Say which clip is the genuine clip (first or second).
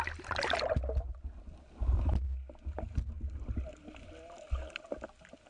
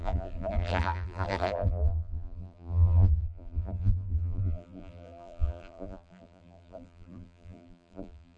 first